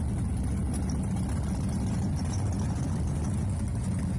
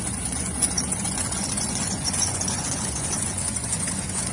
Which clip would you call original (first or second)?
first